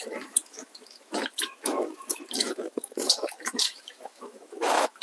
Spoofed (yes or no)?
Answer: yes